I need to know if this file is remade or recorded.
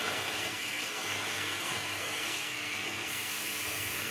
remade